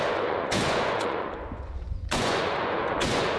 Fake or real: fake